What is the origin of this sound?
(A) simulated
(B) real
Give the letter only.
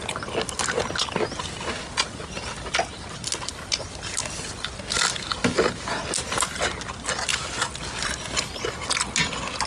B